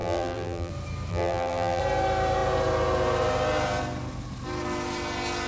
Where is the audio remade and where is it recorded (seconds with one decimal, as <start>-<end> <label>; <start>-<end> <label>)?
0.0-0.7 remade; 0.7-1.1 recorded; 1.1-1.8 remade; 1.8-5.5 recorded